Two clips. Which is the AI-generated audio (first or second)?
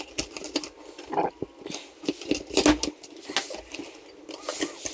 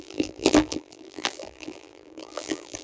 second